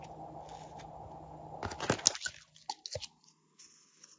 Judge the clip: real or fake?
real